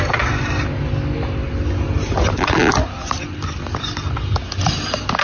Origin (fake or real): real